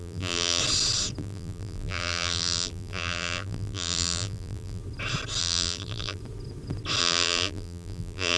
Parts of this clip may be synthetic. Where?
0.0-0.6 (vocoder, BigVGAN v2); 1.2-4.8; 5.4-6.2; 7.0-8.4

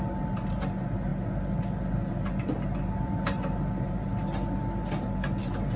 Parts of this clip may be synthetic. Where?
none